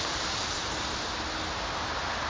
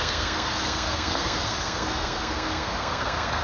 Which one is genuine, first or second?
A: first